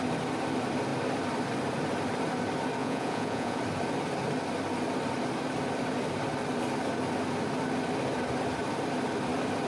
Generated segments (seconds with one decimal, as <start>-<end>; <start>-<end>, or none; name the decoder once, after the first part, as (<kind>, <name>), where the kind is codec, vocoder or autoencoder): 2.8-3.6 (vocoder, Vocos)